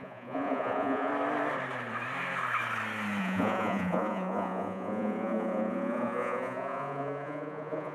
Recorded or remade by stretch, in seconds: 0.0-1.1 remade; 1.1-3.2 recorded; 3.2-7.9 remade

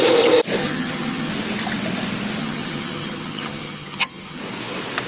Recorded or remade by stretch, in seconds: 0.0-0.6 recorded; 0.6-1.3 remade; 1.3-2.4 recorded; 2.4-4.4 remade; 4.4-5.1 recorded

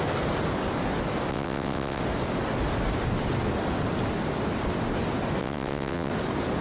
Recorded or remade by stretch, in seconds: 0.0-1.3 recorded; 1.3-2.0 remade; 2.0-5.4 recorded; 5.4-6.1 remade; 6.1-6.6 recorded

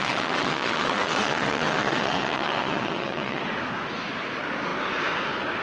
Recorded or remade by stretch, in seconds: 0.0-3.4 remade; 3.4-5.6 recorded

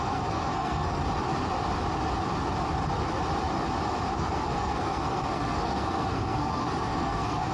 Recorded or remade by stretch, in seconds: 0.0-1.0 remade; 1.0-4.1 recorded; 4.1-7.5 remade

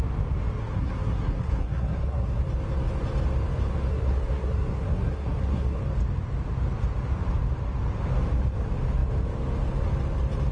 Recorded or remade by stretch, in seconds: 0.0-0.6 recorded; 0.6-2.4 remade; 2.4-3.9 recorded; 3.9-5.8 remade; 5.8-10.5 recorded

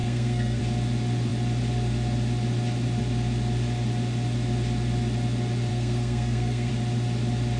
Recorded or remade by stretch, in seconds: 0.0-0.6 remade; 0.6-5.7 recorded; 5.7-6.7 remade; 6.7-7.6 recorded